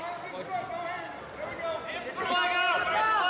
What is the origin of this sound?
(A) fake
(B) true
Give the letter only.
B